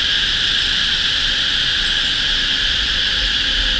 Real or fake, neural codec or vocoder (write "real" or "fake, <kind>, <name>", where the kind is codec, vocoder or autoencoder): real